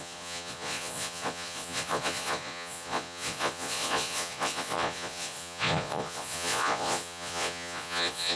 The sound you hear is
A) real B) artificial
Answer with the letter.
B